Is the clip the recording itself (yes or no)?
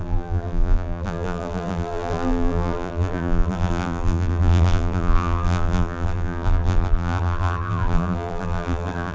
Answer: no